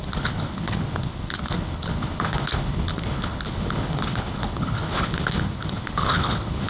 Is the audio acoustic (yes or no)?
no